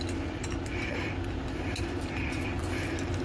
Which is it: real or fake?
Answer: real